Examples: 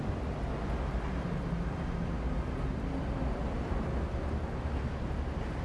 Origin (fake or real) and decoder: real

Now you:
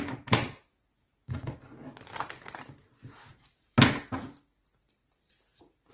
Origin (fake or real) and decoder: real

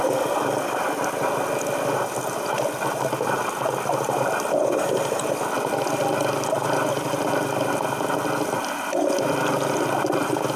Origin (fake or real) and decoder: real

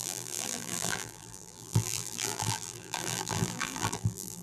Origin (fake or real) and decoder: fake, vocoder, BigVGAN v2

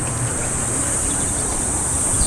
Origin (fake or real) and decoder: fake, vocoder, BigVGAN v2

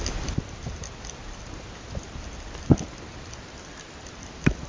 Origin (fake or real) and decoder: real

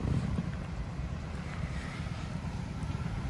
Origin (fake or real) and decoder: fake, vocoder, BigVGAN v2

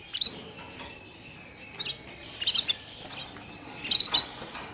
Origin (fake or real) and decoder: real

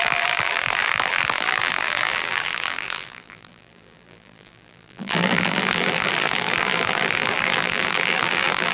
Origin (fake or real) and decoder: fake, vocoder, BigVGAN v2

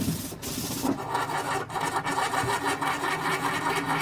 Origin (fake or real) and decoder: real